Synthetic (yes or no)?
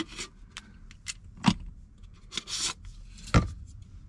no